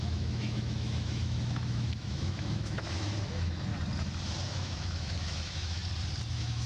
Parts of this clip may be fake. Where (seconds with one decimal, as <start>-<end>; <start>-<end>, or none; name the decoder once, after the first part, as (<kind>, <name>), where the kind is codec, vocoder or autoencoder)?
0.0-3.7 (autoencoder, DAC-VAE); 4.5-5.8; 6.3-6.7

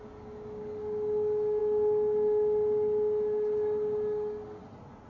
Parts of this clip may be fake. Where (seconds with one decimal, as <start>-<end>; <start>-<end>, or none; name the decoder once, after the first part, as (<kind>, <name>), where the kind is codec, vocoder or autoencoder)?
none